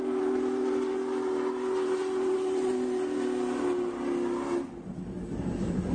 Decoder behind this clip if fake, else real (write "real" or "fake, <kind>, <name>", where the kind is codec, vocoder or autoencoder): real